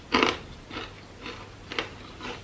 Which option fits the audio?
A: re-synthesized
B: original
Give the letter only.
B